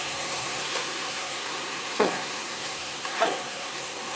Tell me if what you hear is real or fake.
fake